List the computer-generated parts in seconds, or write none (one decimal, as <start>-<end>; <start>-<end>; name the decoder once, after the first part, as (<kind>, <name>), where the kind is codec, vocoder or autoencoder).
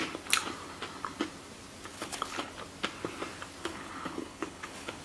1.9-2.5 (codec, HILCodec); 3.6-5.0